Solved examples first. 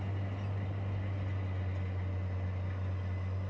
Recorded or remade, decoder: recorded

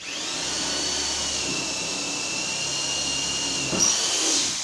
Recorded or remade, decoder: recorded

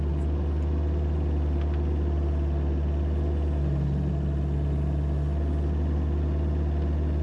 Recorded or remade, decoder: recorded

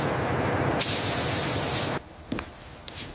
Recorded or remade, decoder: recorded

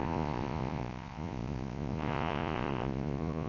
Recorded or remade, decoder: remade, vocoder, Vocos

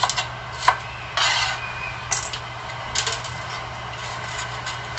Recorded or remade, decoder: recorded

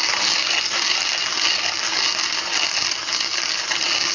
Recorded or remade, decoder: recorded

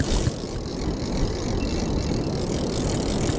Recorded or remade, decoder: recorded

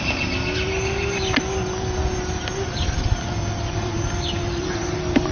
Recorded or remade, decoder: recorded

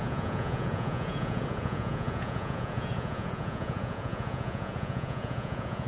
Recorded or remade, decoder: remade, vocoder, Vocos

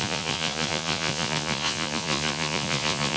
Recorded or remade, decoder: remade, vocoder, Vocos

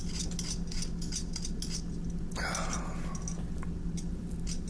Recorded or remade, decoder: recorded